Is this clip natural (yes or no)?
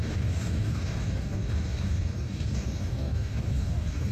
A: no